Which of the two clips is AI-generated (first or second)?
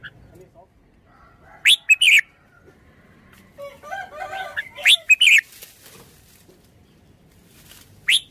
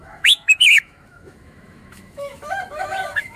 second